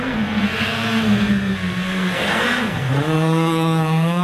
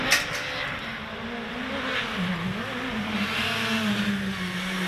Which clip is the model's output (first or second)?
first